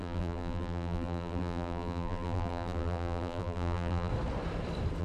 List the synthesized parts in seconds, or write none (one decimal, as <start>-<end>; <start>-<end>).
0.0-4.1